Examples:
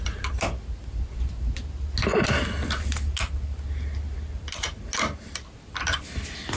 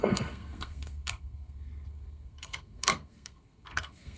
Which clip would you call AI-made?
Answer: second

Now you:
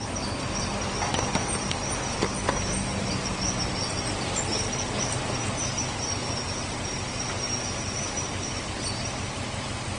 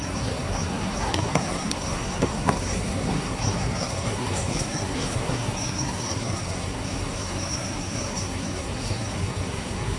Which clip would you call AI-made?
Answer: second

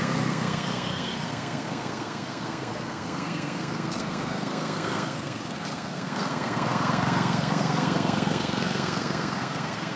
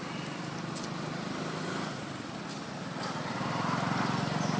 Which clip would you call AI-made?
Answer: first